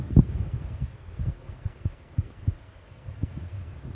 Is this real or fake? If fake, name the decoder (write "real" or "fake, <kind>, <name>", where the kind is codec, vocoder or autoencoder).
fake, codec, SNAC